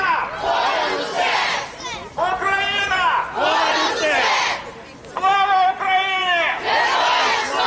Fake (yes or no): no